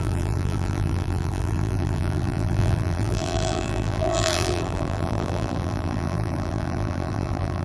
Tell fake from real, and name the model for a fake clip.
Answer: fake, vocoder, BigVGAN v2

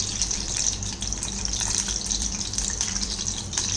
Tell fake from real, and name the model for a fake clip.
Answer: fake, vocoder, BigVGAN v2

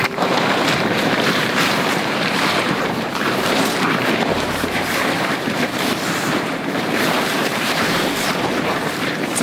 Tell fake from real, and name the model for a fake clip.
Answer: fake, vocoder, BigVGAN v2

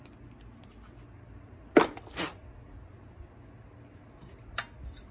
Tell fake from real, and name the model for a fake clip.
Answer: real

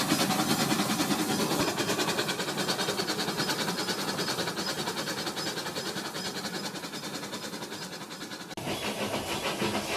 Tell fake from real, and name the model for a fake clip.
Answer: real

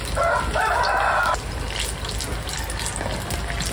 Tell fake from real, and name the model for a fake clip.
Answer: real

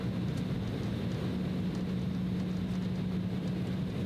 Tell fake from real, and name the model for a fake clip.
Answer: real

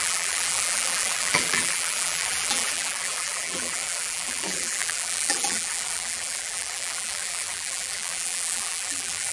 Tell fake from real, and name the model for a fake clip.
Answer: fake, vocoder, BigVGAN v2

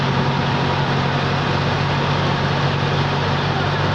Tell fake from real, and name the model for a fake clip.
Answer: real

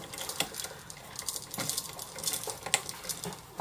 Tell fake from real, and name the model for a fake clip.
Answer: real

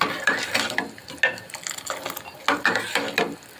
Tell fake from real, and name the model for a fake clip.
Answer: real